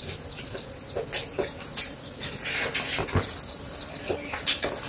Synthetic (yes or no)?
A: no